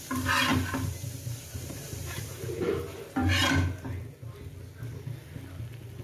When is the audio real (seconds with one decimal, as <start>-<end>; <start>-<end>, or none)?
0.0-0.5; 2.8-6.0